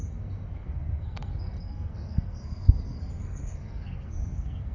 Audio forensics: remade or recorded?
remade